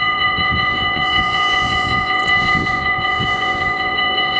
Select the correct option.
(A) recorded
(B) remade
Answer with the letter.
B